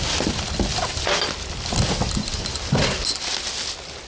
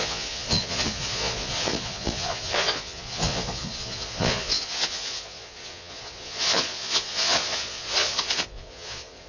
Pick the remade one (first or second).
second